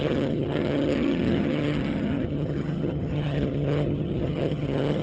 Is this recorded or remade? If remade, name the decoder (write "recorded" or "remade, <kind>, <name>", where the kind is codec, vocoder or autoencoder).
remade, vocoder, HiFi-GAN